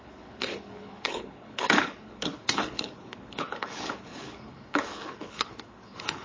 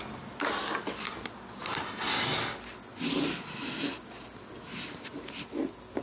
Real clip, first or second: second